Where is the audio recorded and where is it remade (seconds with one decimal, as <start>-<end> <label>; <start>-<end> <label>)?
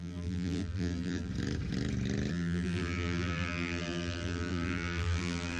0.0-1.3 remade; 1.3-2.3 recorded; 2.3-5.6 remade